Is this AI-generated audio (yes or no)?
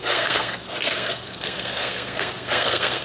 yes